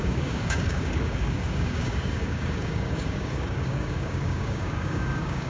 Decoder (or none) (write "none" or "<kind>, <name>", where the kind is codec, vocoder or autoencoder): codec, DAC